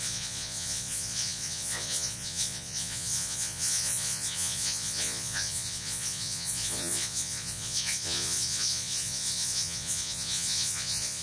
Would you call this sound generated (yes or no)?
yes